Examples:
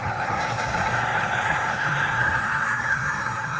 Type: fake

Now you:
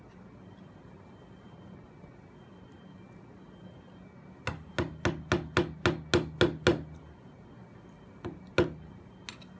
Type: real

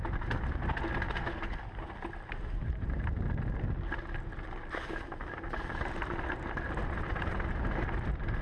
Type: real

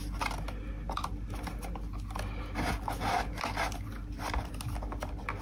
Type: real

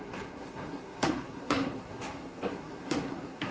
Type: fake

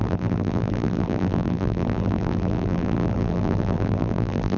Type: fake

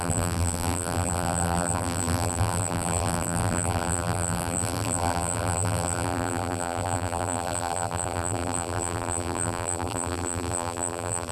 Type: fake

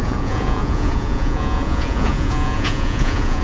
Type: fake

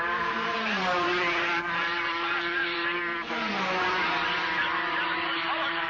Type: fake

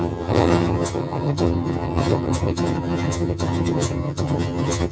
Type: fake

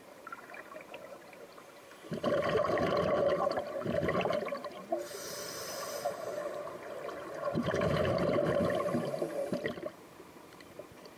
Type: fake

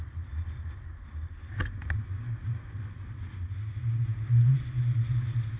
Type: real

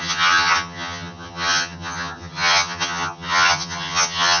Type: fake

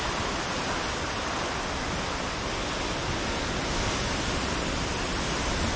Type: real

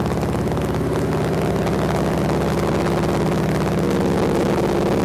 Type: real